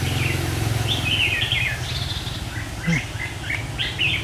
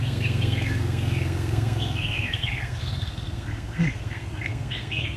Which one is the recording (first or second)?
first